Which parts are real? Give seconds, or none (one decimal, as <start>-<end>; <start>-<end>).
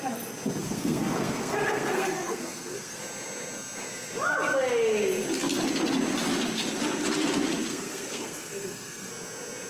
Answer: 0.0-0.6; 3.0-7.7; 9.1-9.7